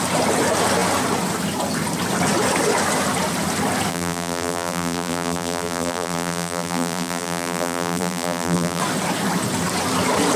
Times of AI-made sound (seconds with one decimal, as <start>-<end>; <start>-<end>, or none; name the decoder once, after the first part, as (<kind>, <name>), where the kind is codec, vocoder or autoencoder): 3.9-8.8 (vocoder, BigVGAN v2)

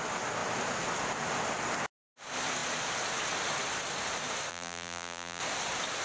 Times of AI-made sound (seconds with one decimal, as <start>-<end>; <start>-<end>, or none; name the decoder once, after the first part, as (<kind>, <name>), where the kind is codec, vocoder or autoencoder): 4.5-5.4 (vocoder, BigVGAN v2)

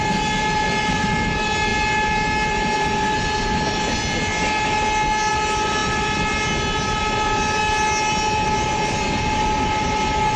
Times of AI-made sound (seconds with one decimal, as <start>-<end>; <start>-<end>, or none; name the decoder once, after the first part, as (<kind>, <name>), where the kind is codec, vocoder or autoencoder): none

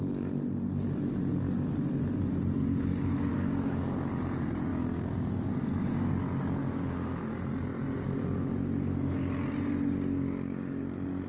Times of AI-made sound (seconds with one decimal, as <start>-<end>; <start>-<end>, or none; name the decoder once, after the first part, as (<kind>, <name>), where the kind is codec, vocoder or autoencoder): 3.3-4.1 (codec, DAC); 4.7-5.5; 6.6-7.3

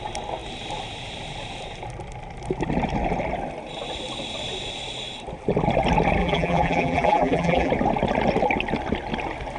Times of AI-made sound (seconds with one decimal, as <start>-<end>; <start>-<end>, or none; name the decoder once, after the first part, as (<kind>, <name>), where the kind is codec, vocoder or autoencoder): 6.2-7.7 (vocoder, BigVGAN v2)

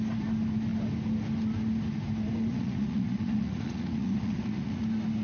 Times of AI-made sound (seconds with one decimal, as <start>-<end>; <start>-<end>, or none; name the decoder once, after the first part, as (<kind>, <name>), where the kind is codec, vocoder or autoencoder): 2.5-4.8 (vocoder, Vocos)

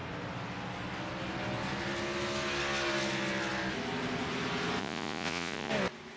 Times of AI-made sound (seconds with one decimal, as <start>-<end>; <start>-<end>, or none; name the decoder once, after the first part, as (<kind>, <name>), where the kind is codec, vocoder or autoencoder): 4.8-5.7 (vocoder, Vocos)

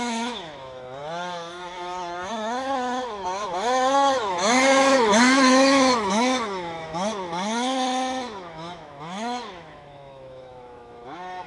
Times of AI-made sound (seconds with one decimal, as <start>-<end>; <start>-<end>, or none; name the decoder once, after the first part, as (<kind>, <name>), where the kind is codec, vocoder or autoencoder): 0.0-11.5 (autoencoder, DAC-VAE)